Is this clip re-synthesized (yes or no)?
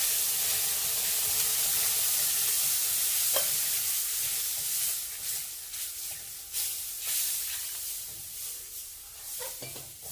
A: yes